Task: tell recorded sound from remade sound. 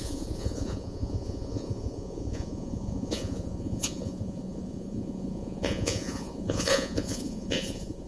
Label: remade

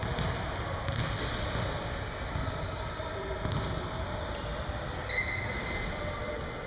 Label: recorded